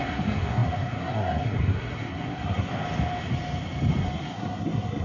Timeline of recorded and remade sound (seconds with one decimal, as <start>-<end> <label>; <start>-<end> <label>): 0.0-2.7 remade; 2.7-4.0 recorded; 4.0-5.0 remade